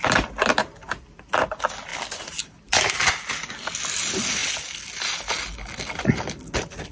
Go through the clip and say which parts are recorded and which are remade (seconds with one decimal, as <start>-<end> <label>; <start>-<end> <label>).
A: 0.0-6.9 recorded